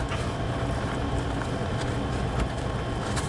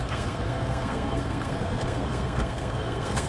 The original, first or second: first